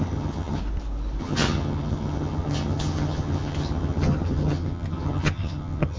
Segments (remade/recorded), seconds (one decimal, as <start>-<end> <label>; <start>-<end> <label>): 0.0-0.6 remade; 0.6-1.2 recorded; 1.2-6.0 remade